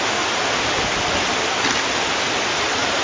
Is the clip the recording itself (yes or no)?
yes